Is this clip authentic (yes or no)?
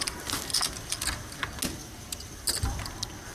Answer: yes